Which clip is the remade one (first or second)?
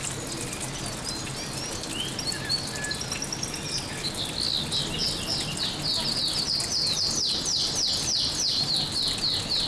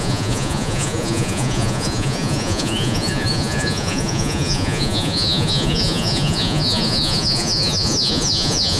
second